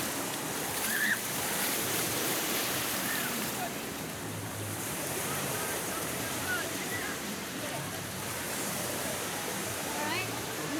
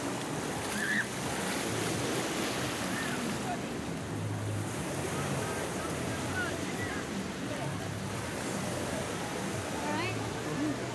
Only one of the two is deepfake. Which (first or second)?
first